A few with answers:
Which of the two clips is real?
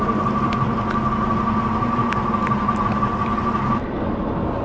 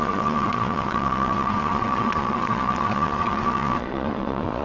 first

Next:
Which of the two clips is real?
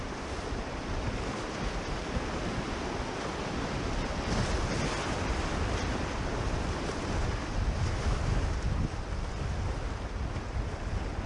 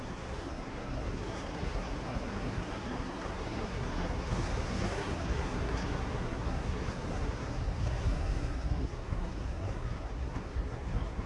first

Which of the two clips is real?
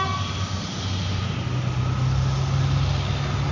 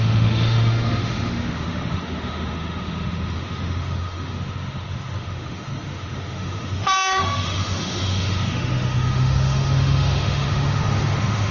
first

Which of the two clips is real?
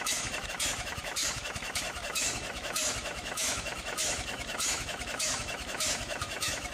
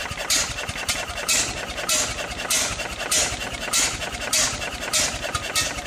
second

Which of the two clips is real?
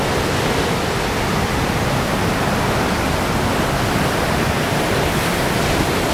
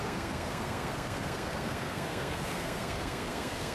first